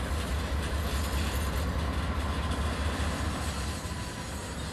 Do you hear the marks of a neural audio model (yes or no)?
no